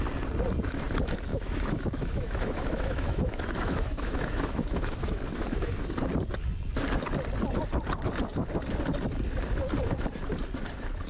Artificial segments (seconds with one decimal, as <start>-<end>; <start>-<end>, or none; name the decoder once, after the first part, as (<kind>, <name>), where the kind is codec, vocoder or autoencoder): 1.3-5.7 (autoencoder, DAC-VAE)